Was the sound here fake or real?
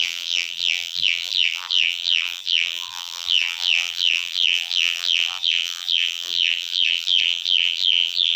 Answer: fake